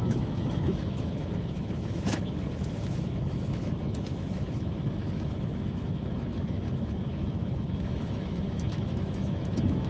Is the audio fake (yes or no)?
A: yes